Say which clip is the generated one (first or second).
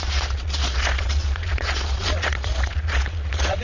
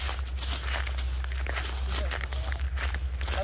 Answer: first